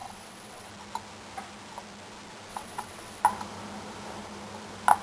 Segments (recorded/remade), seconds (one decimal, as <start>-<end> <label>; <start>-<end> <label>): 0.0-0.7 remade; 0.7-2.5 recorded; 2.5-3.2 remade; 3.2-5.0 recorded